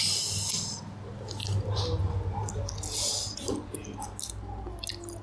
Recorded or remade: recorded